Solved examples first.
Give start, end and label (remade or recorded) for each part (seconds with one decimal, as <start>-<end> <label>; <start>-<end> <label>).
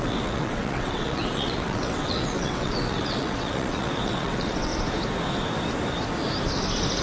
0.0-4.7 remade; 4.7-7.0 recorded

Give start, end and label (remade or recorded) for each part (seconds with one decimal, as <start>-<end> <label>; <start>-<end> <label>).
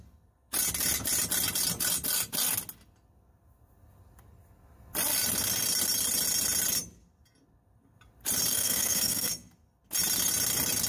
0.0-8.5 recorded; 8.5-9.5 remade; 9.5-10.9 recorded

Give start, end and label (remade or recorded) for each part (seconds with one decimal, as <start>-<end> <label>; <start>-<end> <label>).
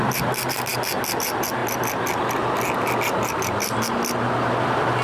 0.0-5.0 recorded